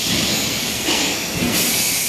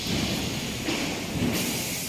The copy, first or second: first